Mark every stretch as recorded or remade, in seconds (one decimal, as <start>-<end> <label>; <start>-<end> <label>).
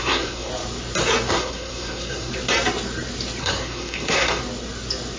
0.0-0.5 remade; 0.5-1.3 recorded; 1.3-2.3 remade; 2.3-3.4 recorded; 3.4-4.4 remade; 4.4-5.2 recorded